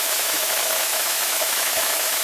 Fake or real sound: fake